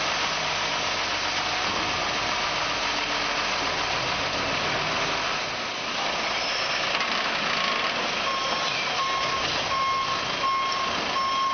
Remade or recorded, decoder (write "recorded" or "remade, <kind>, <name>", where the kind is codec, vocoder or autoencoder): recorded